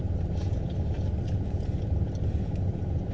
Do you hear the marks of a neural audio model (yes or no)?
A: yes